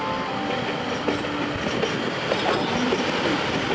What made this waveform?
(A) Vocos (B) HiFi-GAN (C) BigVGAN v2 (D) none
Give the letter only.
D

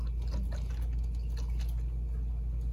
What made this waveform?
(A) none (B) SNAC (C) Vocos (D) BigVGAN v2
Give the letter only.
A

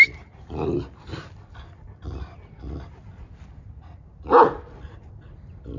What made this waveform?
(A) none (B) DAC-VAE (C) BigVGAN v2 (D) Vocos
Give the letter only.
A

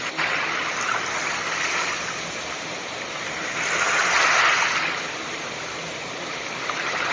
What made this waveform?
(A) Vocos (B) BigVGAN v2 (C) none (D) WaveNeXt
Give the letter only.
B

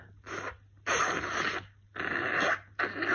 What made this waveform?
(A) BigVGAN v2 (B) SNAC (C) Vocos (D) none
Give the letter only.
D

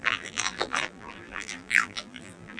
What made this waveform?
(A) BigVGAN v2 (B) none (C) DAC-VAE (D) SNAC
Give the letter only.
A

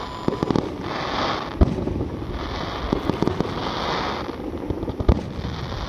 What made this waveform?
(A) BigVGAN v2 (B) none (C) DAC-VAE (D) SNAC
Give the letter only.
B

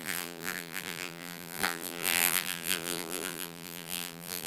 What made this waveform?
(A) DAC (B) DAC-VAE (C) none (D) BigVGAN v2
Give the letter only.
D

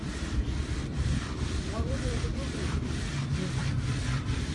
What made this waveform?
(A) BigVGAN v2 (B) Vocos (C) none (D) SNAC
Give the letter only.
A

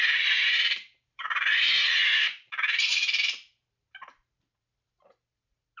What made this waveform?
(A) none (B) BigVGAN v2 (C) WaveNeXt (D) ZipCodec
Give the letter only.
B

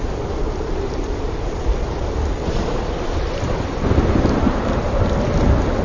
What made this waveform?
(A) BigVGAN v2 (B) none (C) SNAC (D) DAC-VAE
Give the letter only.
A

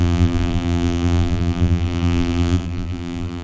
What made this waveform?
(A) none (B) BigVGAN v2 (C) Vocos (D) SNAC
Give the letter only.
B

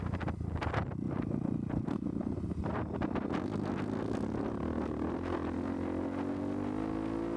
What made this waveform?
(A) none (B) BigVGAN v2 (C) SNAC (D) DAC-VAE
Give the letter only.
A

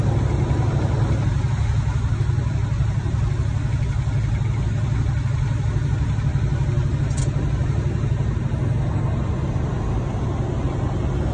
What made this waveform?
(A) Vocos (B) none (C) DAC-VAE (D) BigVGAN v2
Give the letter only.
B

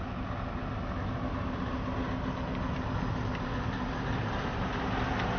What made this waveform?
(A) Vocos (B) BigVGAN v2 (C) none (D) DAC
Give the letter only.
C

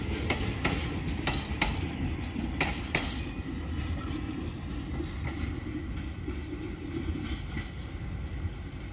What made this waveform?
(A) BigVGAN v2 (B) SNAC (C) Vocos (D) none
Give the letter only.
D